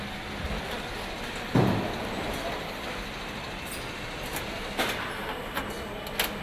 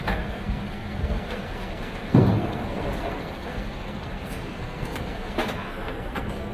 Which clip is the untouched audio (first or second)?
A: first